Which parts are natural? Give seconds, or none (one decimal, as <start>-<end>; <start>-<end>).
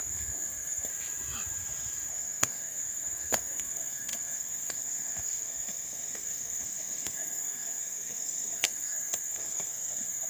0.9-2.1